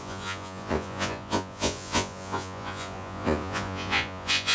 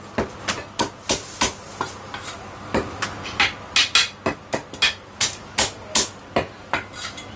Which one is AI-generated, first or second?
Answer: first